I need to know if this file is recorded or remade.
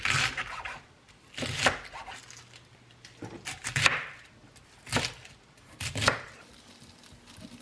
recorded